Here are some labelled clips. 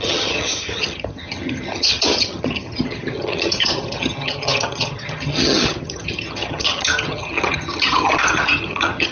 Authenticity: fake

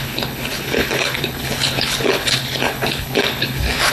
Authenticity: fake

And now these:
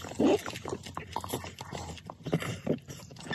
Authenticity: real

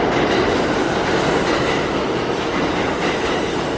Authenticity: real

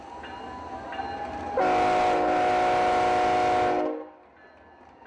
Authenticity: real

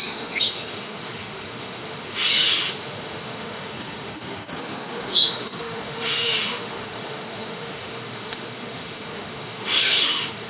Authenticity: fake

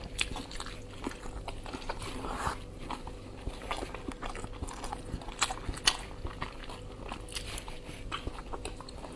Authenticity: real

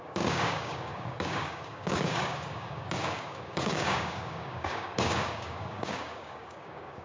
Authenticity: fake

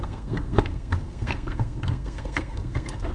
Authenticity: fake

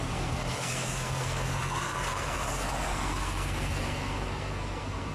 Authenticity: fake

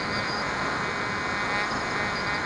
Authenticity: real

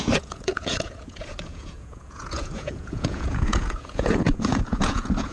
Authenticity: fake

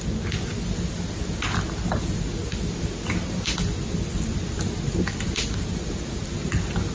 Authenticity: real